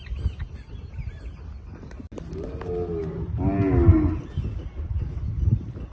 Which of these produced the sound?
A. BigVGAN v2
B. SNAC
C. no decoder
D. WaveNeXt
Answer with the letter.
C